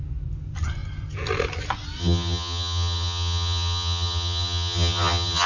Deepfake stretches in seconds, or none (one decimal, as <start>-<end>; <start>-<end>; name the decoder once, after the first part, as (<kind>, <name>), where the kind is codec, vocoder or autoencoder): 2.0-5.5 (vocoder, HiFi-GAN)